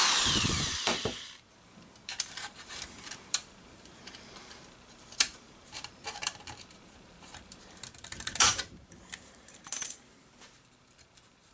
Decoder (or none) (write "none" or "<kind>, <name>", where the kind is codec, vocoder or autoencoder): vocoder, BigVGAN v2